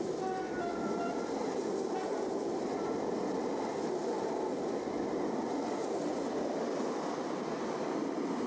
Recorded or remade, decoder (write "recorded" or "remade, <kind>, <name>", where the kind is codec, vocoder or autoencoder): recorded